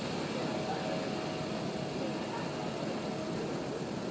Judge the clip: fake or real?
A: real